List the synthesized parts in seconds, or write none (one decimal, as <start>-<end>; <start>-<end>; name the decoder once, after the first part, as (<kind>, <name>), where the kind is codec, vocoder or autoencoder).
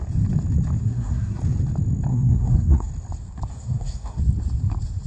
0.8-1.4 (codec, SNAC); 2.1-2.9; 3.5-4.2